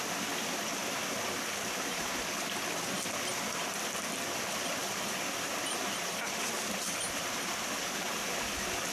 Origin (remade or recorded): recorded